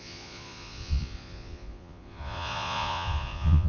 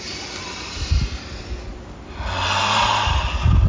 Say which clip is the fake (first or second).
first